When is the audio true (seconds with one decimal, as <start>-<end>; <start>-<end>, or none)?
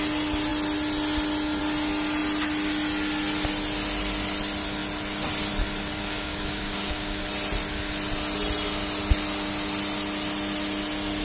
0.0-5.9; 7.2-11.2